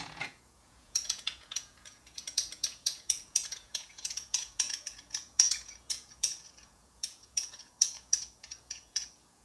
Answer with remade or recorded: remade